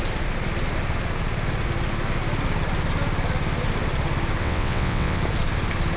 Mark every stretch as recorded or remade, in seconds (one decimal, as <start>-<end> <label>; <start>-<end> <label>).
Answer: 0.0-4.4 recorded; 4.4-5.2 remade; 5.2-6.0 recorded